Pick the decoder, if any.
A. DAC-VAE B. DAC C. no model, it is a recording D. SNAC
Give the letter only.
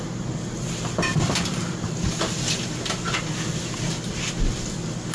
C